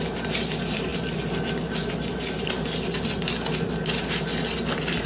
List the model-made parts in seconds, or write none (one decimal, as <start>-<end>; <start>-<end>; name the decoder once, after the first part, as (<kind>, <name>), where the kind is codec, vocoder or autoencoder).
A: none